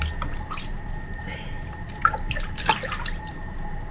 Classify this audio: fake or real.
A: fake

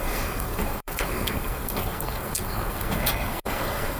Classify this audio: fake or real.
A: fake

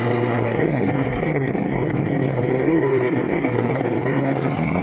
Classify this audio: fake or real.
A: fake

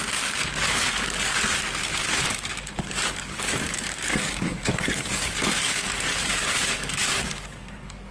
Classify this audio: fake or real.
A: fake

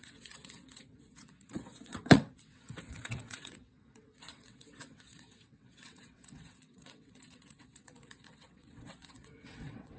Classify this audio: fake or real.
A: fake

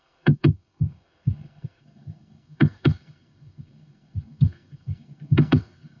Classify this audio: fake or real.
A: fake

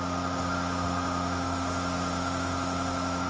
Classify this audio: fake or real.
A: fake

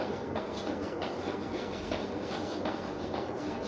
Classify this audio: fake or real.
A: fake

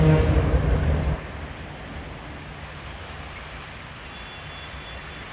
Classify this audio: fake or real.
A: real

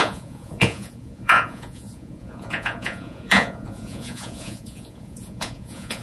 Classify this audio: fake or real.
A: fake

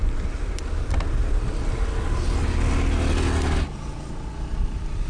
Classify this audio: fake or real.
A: real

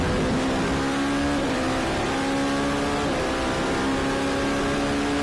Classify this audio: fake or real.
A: real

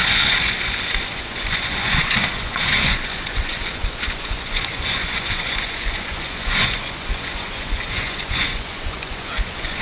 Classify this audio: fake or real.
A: fake